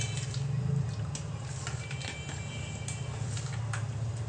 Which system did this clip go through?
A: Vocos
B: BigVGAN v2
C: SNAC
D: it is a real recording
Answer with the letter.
D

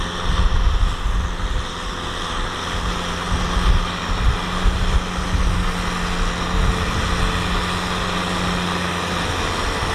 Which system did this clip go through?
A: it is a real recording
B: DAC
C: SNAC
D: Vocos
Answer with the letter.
A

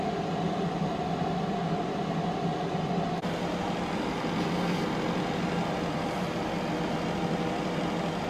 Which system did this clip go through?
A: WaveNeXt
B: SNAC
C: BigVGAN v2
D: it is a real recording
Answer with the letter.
D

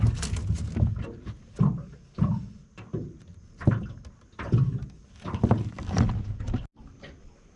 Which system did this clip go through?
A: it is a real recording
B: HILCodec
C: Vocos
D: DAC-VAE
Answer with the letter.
A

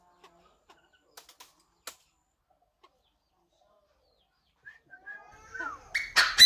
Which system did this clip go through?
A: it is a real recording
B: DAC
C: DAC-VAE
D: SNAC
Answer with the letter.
A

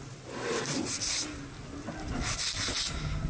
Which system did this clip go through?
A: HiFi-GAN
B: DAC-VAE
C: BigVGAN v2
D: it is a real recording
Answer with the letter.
D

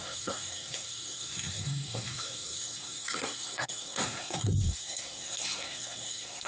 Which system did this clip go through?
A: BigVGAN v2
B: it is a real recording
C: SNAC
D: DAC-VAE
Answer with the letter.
C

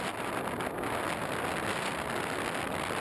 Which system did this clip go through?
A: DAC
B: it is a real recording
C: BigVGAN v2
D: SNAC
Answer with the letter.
B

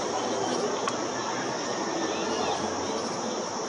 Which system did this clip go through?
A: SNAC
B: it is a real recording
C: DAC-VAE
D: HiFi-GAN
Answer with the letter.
B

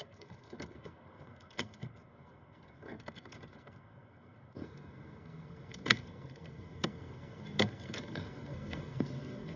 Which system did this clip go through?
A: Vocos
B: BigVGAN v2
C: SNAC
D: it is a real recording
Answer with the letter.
C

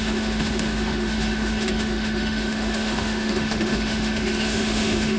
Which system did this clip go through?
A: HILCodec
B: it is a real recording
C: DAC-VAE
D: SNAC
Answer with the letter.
C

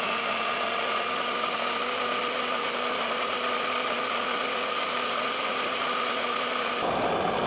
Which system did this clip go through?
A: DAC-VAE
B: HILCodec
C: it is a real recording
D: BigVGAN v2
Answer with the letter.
C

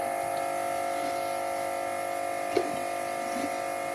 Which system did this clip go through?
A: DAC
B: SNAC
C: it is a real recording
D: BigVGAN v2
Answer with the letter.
C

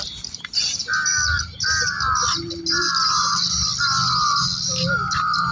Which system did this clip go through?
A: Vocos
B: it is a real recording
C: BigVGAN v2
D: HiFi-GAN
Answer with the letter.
B